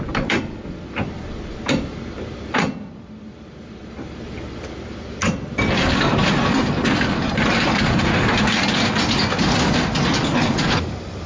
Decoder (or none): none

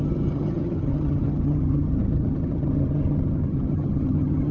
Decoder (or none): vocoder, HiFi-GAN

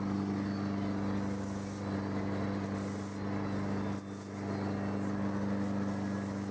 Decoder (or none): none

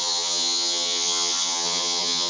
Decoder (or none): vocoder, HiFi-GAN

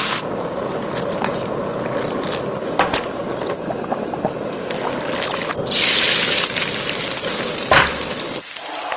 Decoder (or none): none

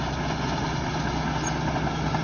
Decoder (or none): none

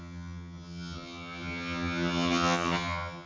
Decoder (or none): vocoder, HiFi-GAN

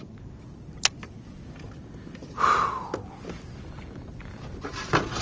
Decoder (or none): none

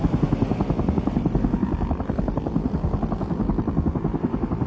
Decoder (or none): none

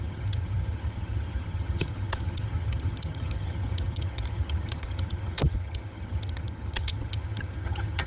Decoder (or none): vocoder, HiFi-GAN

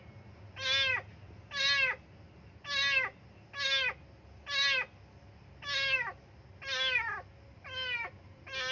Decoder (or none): none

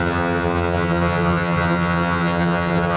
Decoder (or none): vocoder, HiFi-GAN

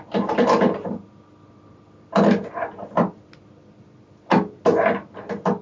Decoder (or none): none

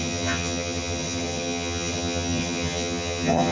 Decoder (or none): vocoder, HiFi-GAN